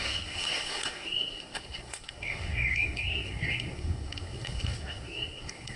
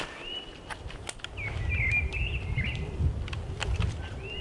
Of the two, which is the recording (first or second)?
second